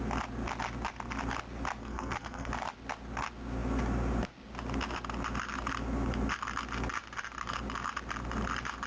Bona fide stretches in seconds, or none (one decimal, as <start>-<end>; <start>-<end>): 0.0-1.8; 2.5-8.9